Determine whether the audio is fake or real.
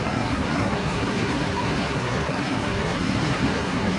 fake